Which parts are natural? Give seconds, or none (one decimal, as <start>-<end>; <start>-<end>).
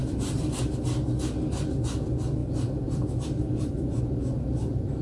0.6-2.4; 4.0-5.0